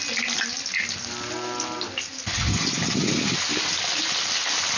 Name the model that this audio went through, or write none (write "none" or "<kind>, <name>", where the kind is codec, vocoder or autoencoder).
none